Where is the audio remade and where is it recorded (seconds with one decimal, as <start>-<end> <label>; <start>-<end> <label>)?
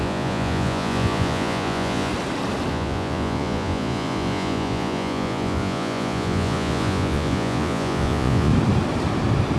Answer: 0.0-2.1 remade; 2.1-2.7 recorded; 2.7-8.5 remade; 8.5-9.6 recorded